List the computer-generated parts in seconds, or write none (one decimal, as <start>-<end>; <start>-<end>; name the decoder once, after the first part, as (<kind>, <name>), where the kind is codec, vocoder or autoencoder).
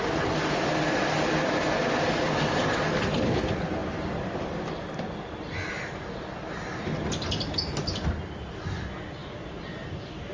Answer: none